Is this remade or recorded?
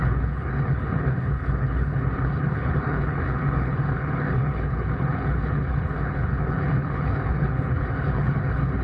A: remade